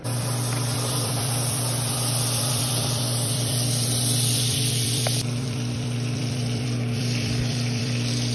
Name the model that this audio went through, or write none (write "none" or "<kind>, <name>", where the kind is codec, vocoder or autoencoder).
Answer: vocoder, BigVGAN v2